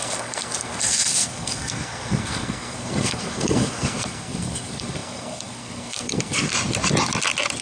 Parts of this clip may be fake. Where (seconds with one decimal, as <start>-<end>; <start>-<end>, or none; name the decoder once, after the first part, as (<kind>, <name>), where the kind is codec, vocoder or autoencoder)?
0.0-6.5 (codec, SNAC)